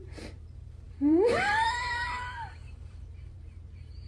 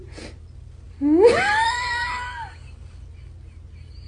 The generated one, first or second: first